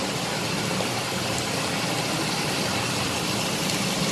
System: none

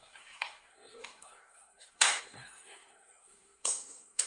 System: codec, SNAC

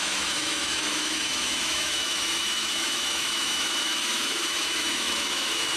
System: autoencoder, DAC-VAE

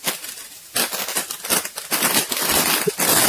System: none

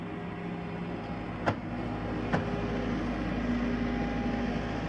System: none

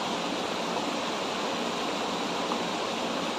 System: none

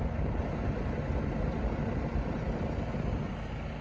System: none